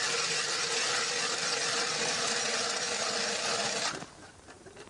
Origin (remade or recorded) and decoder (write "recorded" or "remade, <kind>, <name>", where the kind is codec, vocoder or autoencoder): recorded